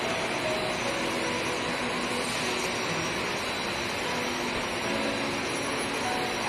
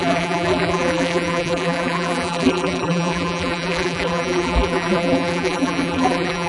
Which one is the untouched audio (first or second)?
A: first